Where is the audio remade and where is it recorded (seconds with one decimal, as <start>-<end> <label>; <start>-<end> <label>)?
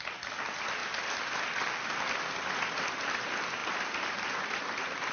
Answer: 0.0-5.1 recorded